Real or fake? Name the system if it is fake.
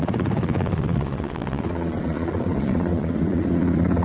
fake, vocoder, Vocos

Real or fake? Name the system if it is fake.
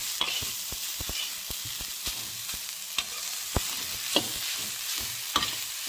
real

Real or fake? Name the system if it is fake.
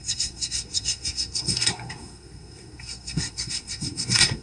fake, codec, SNAC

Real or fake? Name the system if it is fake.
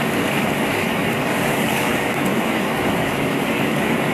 fake, codec, DAC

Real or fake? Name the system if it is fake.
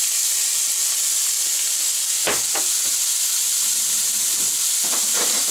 real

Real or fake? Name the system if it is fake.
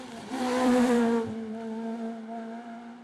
fake, vocoder, BigVGAN v2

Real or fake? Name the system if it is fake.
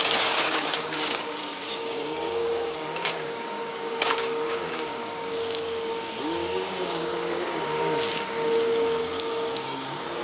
fake, codec, DAC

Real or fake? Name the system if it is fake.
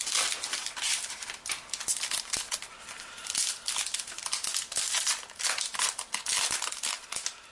real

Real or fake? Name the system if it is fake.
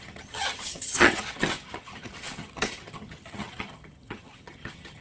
fake, vocoder, HiFi-GAN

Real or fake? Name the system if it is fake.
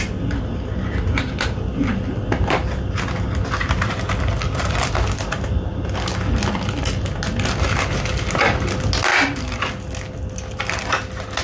real